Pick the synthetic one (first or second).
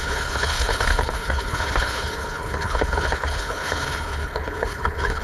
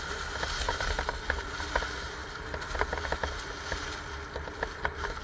first